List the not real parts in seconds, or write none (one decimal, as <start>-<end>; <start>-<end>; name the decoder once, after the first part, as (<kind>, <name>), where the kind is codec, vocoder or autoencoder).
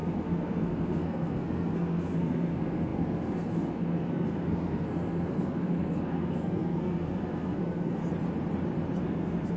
0.0-8.0 (codec, SNAC); 9.0-9.6